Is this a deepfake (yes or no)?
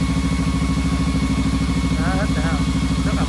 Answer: no